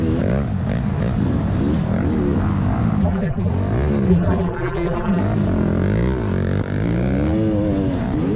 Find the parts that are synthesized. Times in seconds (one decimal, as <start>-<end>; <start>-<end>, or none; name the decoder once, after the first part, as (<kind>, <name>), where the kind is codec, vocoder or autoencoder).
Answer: 3.0-3.5 (vocoder, BigVGAN v2); 4.1-5.2